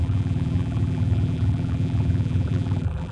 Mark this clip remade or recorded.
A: remade